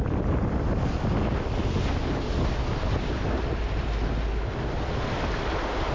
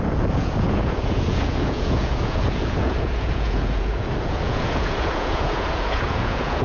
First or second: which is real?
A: first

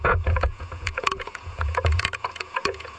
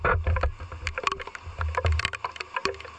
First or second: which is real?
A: second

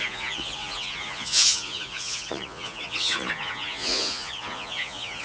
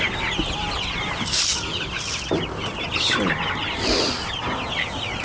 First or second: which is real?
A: second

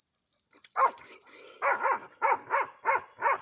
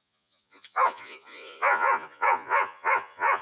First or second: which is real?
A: first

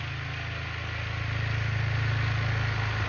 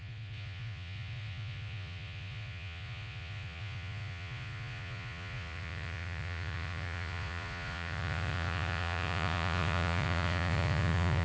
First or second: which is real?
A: first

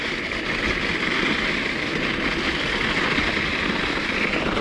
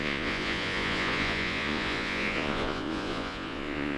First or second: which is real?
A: first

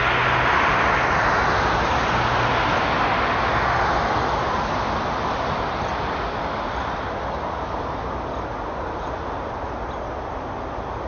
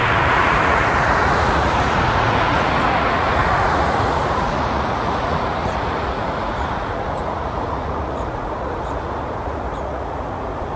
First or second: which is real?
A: first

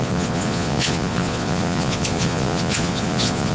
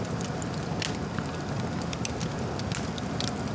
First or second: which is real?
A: second